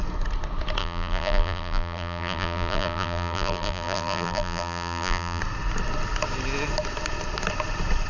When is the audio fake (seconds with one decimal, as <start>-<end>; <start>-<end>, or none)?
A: 0.8-5.4